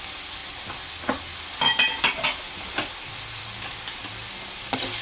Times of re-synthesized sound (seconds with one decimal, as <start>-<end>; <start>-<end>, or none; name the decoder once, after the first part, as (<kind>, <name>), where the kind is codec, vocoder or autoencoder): none